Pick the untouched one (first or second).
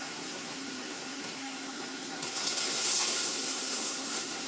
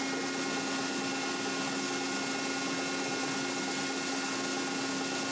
second